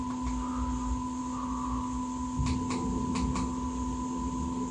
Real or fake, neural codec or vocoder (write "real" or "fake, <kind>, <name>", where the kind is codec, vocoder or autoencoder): real